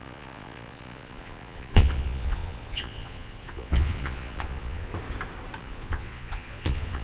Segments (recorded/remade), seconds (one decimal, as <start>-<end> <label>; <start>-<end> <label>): 0.0-4.9 remade; 4.9-5.6 recorded; 5.6-7.0 remade